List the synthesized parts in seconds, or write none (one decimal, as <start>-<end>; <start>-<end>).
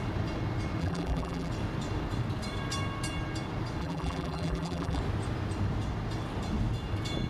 0.8-1.5; 3.8-5.0